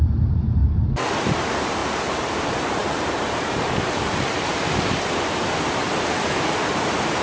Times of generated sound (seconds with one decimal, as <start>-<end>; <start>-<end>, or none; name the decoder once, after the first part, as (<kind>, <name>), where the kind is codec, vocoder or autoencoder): 0.0-0.6 (vocoder, BigVGAN v2); 1.2-5.8; 6.7-7.2